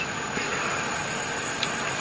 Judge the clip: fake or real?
real